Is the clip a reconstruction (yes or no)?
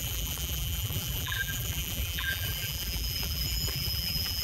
yes